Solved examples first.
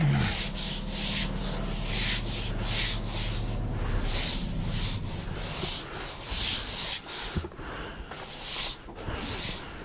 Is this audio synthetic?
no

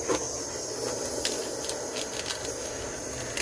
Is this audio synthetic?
no